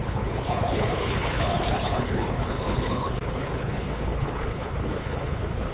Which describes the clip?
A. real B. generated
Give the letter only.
B